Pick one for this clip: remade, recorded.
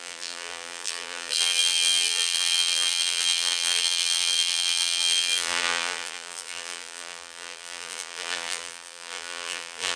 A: remade